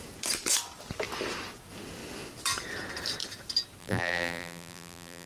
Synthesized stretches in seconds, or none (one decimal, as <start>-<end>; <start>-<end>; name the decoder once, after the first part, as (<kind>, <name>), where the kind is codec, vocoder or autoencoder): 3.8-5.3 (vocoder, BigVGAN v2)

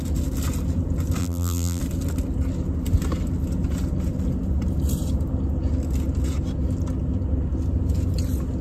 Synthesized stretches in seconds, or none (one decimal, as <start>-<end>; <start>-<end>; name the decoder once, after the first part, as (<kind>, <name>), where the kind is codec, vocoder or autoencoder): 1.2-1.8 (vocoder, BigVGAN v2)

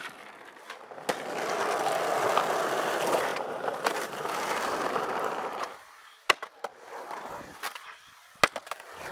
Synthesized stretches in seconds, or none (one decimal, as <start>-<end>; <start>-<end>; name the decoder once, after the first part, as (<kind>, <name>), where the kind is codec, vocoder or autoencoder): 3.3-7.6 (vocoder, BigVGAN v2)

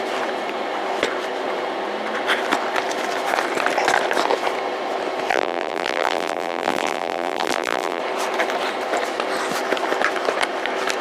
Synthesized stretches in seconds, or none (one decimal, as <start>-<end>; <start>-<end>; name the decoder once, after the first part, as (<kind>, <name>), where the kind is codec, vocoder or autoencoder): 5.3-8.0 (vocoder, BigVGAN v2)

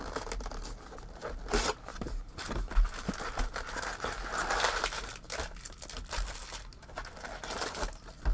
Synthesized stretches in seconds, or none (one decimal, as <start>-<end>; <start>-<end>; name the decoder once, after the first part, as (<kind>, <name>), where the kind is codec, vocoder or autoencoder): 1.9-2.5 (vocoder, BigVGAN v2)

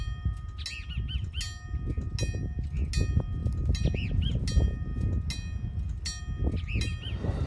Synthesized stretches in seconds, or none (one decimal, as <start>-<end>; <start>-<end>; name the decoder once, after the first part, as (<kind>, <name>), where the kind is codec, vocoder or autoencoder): none

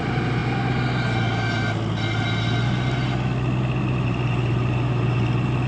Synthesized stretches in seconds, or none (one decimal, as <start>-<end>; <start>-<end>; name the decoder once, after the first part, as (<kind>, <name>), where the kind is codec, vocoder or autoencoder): 0.0-0.4 (vocoder, BigVGAN v2); 3.8-5.7

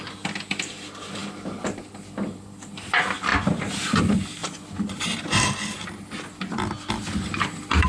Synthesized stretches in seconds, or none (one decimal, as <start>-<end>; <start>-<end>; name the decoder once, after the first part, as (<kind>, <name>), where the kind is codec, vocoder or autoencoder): 0.0-3.3 (vocoder, BigVGAN v2); 4.0-4.4; 6.9-7.9